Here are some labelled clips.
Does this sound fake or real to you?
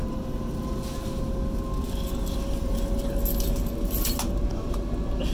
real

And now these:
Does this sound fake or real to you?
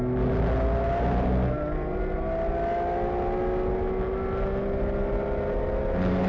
real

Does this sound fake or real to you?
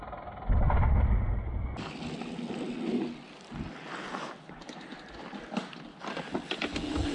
real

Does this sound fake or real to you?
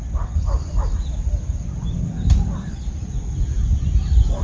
real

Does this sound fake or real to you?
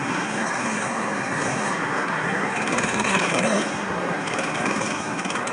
fake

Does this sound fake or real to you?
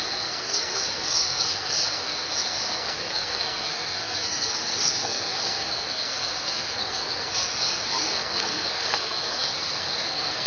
fake